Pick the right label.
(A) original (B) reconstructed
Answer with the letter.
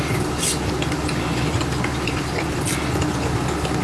A